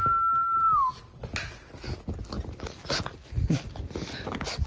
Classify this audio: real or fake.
real